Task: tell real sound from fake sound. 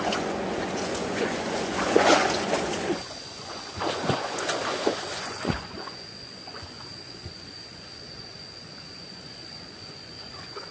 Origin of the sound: fake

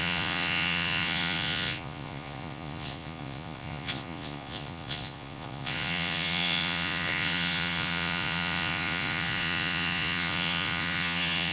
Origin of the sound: fake